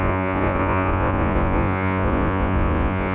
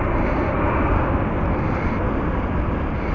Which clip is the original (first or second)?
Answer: second